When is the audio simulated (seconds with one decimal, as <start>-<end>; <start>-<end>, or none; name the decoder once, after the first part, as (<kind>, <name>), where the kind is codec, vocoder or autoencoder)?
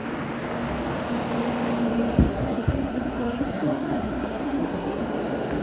2.3-5.0 (codec, SNAC)